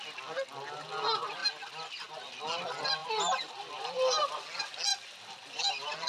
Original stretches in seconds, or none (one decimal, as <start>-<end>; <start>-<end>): 0.0-3.0; 3.5-6.1